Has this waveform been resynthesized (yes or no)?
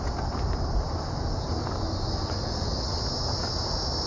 no